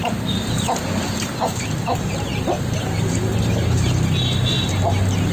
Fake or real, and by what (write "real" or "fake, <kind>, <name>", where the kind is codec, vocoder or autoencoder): real